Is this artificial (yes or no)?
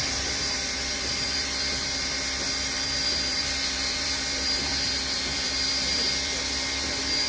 yes